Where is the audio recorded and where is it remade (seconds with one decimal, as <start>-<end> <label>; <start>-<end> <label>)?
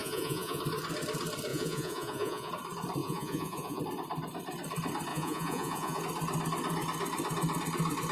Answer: 0.0-0.6 remade; 0.6-1.5 recorded; 1.5-2.5 remade; 2.5-3.0 recorded; 3.0-3.8 remade; 3.8-5.1 recorded; 5.1-6.0 remade; 6.0-8.1 recorded